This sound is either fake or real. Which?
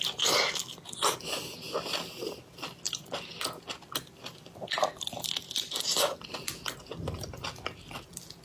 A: real